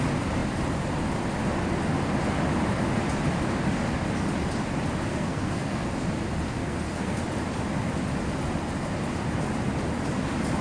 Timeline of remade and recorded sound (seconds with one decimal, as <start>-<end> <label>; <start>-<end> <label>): 0.0-5.1 recorded; 5.1-5.9 remade; 5.9-6.6 recorded; 6.6-7.2 remade; 7.2-10.6 recorded